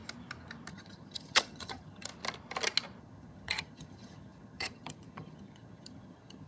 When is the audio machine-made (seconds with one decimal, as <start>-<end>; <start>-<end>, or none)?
0.7-2.1; 3.0-6.5